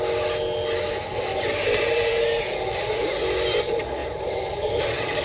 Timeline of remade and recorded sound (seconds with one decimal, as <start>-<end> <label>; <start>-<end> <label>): 0.0-1.3 recorded; 1.3-2.1 remade; 2.1-4.0 recorded; 4.0-4.8 remade; 4.8-5.2 recorded